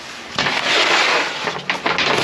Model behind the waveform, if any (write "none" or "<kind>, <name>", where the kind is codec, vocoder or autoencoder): none